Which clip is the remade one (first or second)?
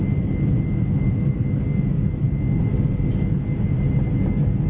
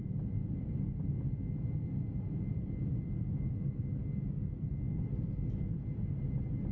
second